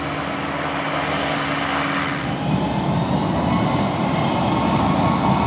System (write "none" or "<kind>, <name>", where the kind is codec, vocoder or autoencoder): none